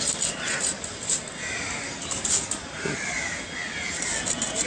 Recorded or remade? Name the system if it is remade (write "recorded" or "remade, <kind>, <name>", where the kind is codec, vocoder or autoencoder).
recorded